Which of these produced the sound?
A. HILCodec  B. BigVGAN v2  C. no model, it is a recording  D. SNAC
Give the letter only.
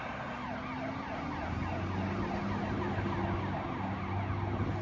C